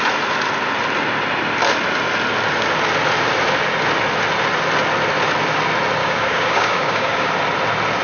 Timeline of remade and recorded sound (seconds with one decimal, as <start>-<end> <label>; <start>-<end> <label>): 0.0-6.0 recorded; 6.0-7.3 remade; 7.3-8.0 recorded